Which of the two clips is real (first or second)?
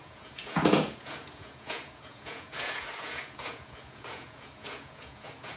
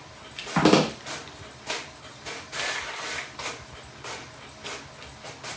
second